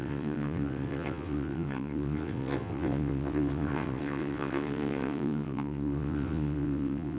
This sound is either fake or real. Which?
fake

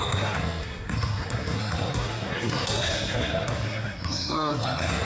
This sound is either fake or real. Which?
fake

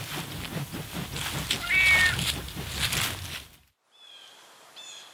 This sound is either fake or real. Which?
real